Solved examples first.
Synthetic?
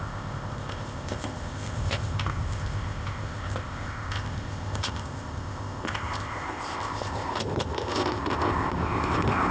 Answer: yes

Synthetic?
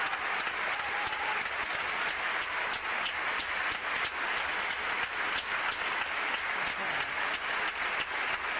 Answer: no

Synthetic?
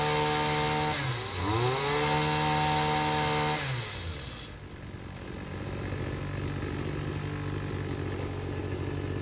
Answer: no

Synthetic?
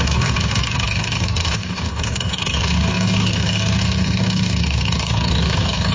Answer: yes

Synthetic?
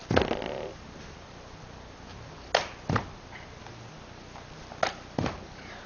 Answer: no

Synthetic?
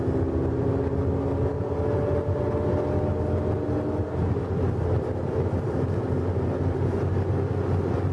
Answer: no